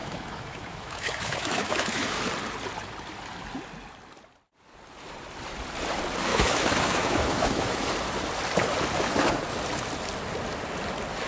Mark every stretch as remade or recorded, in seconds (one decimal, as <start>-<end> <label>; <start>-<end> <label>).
0.0-2.2 remade; 2.2-6.3 recorded; 6.3-7.8 remade; 7.8-11.3 recorded